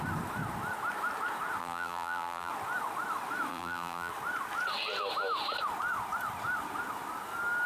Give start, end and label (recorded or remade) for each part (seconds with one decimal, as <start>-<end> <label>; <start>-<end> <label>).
0.0-1.6 recorded; 1.6-2.5 remade; 2.5-3.5 recorded; 3.5-4.1 remade; 4.1-7.7 recorded

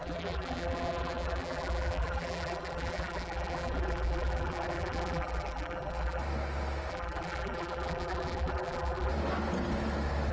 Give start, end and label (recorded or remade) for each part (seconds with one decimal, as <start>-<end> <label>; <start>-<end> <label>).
0.0-6.2 remade; 6.2-6.9 recorded; 6.9-9.1 remade; 9.1-10.3 recorded

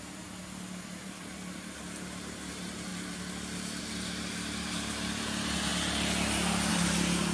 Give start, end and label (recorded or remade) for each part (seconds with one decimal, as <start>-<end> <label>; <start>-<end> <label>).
0.0-2.9 remade; 2.9-3.8 recorded; 3.8-5.7 remade; 5.7-6.7 recorded; 6.7-7.3 remade

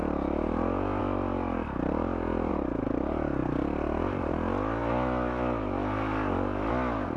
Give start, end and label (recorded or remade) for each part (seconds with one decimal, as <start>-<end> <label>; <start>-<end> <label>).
0.0-7.2 recorded